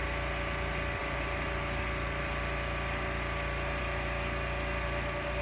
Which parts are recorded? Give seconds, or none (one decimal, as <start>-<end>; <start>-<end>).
0.0-5.4